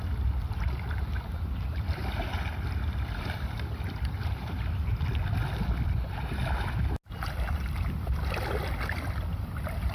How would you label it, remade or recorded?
recorded